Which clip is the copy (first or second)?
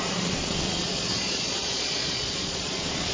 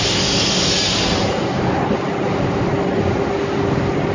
first